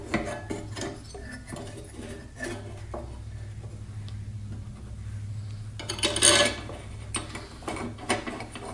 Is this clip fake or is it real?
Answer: real